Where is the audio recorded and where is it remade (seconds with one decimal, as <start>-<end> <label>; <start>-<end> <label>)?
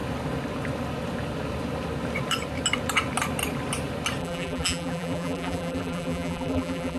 0.0-4.2 recorded; 4.2-7.0 remade